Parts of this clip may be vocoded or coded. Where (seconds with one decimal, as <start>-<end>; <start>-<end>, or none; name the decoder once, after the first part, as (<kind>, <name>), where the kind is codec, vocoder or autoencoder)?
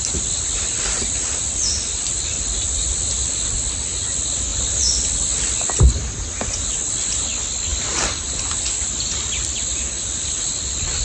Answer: 7.7-11.0 (vocoder, BigVGAN v2)